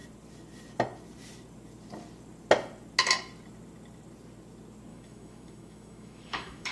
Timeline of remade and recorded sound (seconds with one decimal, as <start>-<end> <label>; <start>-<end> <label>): 0.0-4.9 recorded; 4.9-6.7 remade